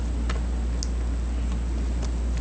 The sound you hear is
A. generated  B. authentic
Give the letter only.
B